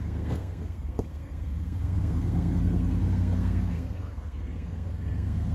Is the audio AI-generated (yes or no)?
yes